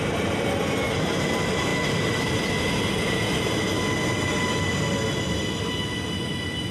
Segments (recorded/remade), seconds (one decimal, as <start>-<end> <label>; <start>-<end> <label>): 0.0-6.7 recorded